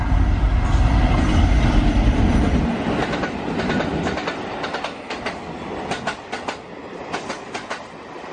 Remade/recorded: recorded